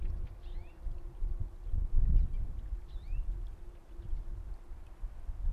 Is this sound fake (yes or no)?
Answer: no